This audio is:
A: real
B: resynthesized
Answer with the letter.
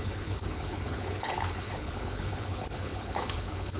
B